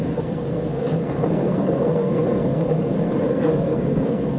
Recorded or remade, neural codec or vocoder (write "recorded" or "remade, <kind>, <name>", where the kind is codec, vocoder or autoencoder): remade, codec, SNAC